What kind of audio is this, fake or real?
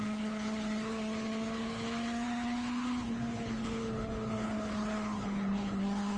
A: fake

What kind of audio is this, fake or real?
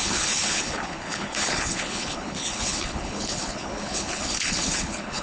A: fake